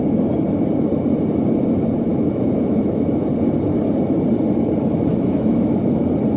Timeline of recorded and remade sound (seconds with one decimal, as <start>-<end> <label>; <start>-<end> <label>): 0.0-2.1 recorded; 2.1-3.3 remade; 3.3-5.1 recorded; 5.1-5.9 remade; 5.9-6.4 recorded